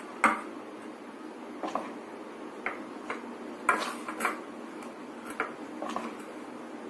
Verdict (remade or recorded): recorded